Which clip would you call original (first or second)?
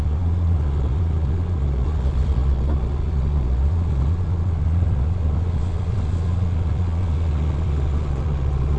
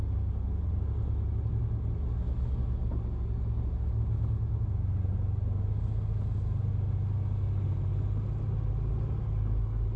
second